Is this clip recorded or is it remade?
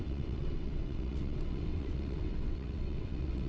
remade